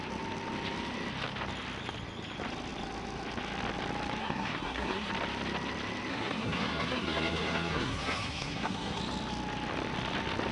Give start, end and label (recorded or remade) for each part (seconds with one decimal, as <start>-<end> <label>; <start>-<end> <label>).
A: 0.0-4.2 recorded; 4.2-5.1 remade; 5.1-6.1 recorded; 6.1-9.0 remade; 9.0-10.5 recorded